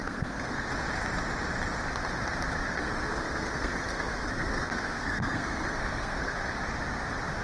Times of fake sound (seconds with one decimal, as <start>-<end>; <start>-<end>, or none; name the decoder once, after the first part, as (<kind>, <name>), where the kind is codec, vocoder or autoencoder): 0.0-0.7 (codec, SNAC); 2.8-6.3